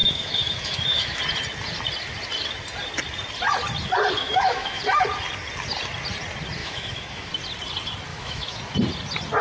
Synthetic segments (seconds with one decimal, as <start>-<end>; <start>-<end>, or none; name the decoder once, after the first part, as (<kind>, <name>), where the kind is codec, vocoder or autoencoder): 0.0-1.2 (autoencoder, DAC-VAE); 4.2-4.8; 6.6-7.3; 8.1-8.6